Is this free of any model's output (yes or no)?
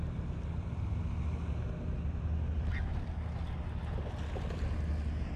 yes